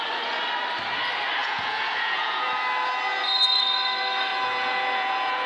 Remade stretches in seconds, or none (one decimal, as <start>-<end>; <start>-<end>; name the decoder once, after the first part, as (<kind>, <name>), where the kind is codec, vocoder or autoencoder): 1.4-2.5 (vocoder, Vocos); 4.3-5.5